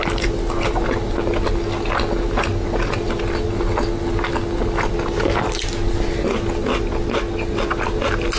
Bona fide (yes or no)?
yes